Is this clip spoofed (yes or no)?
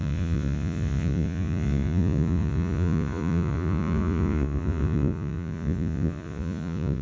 yes